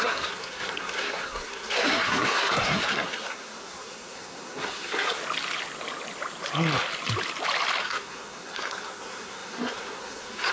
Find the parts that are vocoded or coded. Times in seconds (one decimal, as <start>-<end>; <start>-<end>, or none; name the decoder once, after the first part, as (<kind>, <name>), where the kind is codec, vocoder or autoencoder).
0.0-5.2 (codec, SNAC); 7.8-10.5